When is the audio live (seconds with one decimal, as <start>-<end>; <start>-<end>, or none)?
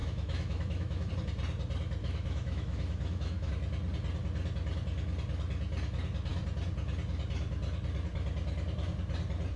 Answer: 1.1-2.0; 3.5-9.6